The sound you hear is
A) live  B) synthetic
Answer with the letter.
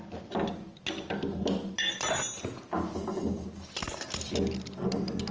A